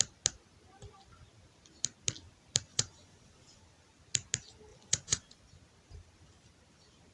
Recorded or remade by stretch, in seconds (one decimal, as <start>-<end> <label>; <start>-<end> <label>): 0.0-2.7 recorded; 2.7-3.6 remade; 3.6-4.7 recorded; 4.7-5.4 remade; 5.4-7.1 recorded